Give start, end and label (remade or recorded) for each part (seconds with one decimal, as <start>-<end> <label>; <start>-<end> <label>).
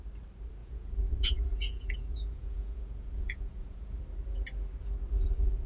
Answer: 0.0-0.6 recorded; 0.6-4.0 remade; 4.0-5.7 recorded